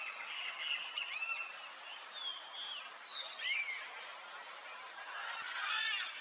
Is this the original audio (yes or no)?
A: yes